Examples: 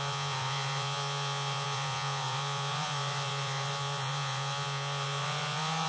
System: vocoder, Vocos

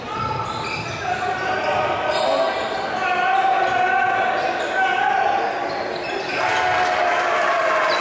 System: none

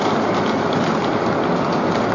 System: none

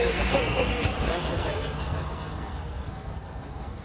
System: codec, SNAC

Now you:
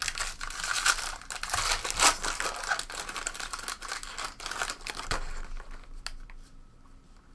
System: none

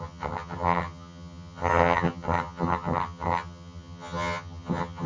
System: vocoder, HiFi-GAN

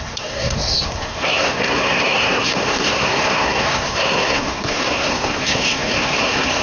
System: codec, SNAC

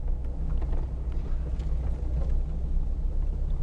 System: none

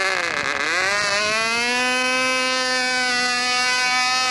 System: none